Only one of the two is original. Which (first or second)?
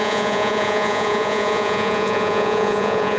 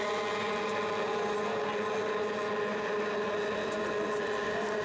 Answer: second